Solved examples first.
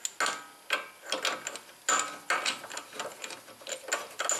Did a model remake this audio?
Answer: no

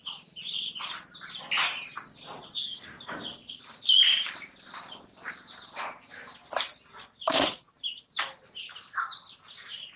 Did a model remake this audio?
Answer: no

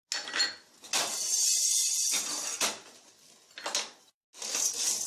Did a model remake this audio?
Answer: no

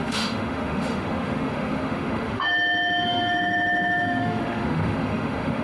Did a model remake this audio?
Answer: yes